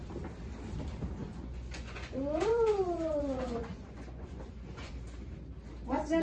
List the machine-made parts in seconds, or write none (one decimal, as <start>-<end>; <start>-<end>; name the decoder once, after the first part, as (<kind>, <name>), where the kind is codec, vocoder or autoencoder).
1.2-4.9 (vocoder, Vocos)